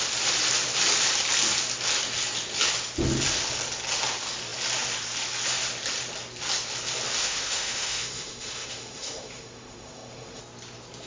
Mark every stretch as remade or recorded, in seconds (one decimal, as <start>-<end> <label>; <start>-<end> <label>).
0.0-7.2 recorded; 7.2-10.4 remade; 10.4-11.1 recorded